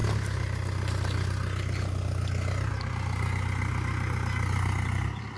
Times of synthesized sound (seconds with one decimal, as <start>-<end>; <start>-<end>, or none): none